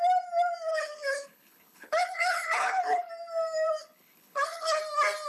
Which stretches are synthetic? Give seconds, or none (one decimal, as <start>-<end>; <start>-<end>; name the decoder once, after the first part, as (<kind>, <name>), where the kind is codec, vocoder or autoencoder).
0.7-3.1 (codec, HILCodec); 3.8-4.8